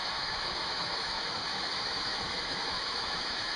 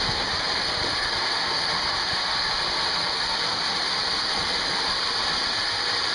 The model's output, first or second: first